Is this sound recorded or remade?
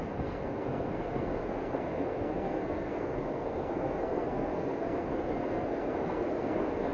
remade